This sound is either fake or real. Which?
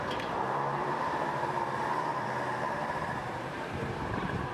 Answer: fake